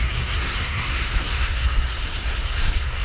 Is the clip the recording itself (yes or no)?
no